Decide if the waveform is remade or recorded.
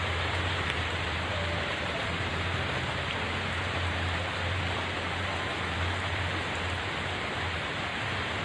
remade